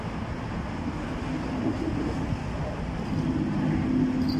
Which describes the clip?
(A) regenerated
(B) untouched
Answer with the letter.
B